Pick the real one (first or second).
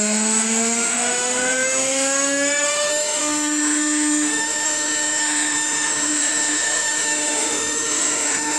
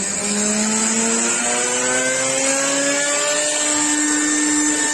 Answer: second